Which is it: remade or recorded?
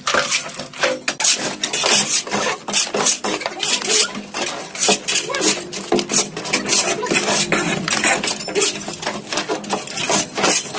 recorded